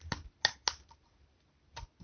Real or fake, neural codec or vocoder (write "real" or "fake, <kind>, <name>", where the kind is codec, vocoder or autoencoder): real